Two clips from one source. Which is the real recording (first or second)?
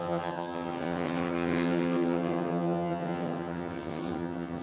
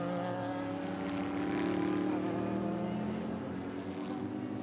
second